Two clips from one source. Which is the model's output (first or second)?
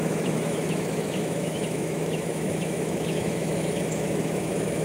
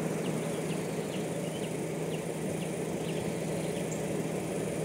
first